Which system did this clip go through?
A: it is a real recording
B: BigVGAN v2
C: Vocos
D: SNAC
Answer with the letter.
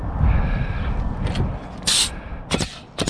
A